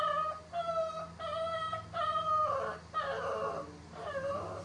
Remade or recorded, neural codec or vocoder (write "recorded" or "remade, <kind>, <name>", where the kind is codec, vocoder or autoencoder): recorded